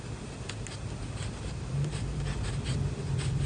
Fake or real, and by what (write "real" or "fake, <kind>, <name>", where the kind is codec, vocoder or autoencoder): real